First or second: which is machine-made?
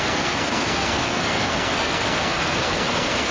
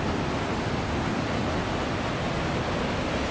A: first